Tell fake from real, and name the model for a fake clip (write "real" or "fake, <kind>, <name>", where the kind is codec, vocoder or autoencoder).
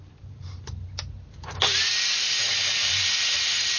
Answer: fake, vocoder, BigVGAN v2